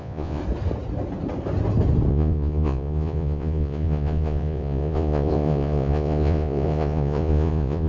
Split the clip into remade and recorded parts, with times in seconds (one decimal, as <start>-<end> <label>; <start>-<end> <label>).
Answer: 0.0-0.4 remade; 0.4-2.1 recorded; 2.1-7.9 remade

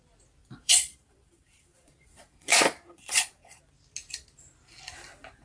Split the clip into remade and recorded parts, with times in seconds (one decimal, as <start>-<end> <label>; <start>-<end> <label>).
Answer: 0.0-0.4 recorded; 0.4-3.6 remade; 3.6-5.4 recorded